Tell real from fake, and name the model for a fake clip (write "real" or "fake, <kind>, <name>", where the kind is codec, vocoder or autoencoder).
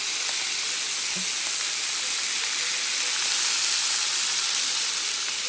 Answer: real